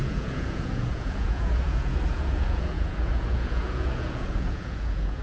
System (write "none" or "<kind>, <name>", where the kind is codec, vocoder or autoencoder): vocoder, Vocos